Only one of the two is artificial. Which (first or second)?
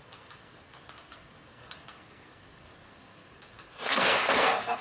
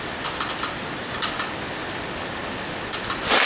first